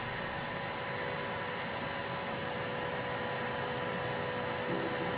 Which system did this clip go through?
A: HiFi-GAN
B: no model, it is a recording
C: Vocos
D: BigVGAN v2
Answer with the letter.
B